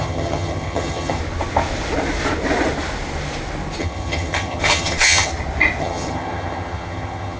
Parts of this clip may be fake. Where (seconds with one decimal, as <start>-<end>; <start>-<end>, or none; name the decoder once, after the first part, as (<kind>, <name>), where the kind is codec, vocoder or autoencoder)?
0.0-1.2 (vocoder, HiFi-GAN); 3.8-5.3; 5.8-7.4